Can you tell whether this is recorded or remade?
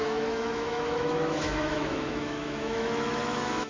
remade